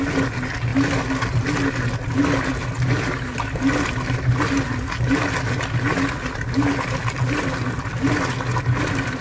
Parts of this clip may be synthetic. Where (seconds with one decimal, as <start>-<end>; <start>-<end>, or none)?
none